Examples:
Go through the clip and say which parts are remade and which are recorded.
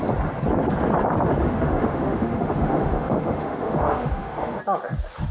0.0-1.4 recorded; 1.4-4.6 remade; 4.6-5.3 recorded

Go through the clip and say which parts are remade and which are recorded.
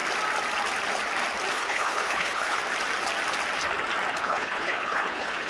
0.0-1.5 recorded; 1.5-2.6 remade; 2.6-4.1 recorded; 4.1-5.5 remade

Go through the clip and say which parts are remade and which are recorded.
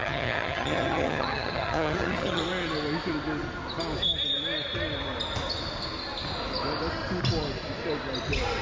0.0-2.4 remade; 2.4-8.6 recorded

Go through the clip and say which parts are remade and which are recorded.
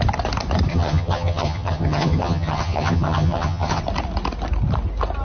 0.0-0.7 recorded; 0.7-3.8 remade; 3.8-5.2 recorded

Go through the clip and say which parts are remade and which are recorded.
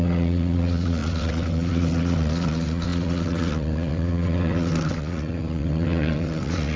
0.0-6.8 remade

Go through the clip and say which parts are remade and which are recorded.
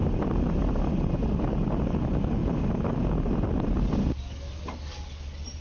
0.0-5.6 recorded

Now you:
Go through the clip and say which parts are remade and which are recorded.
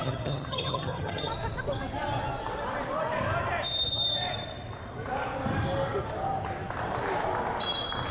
0.0-1.3 remade; 1.3-8.1 recorded